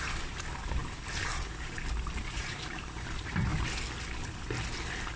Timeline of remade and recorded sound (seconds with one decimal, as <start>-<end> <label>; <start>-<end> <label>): 0.0-3.5 remade; 3.5-5.2 recorded